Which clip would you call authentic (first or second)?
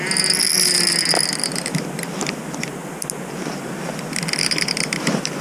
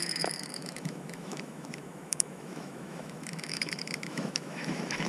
first